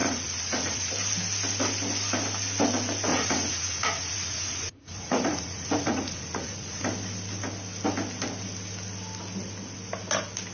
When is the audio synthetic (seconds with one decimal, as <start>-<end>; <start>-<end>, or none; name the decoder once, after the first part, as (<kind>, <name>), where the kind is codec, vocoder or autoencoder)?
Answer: 0.0-0.9 (vocoder, Vocos); 3.1-6.8